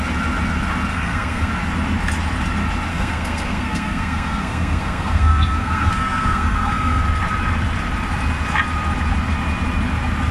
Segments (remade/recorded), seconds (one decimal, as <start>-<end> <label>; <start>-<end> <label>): 0.0-0.9 recorded; 0.9-1.5 remade; 1.5-2.9 recorded; 2.9-7.0 remade; 7.0-10.3 recorded